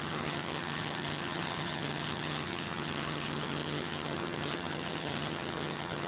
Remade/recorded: remade